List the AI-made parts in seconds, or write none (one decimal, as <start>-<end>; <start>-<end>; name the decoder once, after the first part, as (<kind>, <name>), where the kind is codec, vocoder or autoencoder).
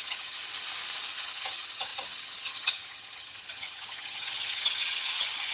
0.0-0.4 (vocoder, HiFi-GAN); 1.1-5.5